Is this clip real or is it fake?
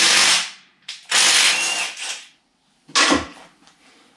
real